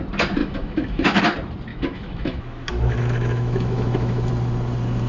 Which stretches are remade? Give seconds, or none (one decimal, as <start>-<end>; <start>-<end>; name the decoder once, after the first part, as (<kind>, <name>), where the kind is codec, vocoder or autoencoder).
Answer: 0.4-1.2 (autoencoder, DAC-VAE); 1.7-4.3